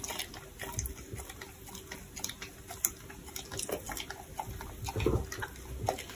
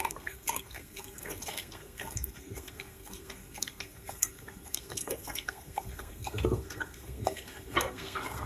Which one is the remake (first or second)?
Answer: second